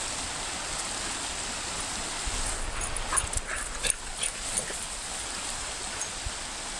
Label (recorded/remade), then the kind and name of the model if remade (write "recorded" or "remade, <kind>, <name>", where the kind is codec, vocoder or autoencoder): recorded